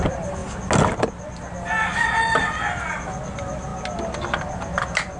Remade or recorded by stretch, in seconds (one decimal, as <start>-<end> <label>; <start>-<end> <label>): 0.0-5.2 recorded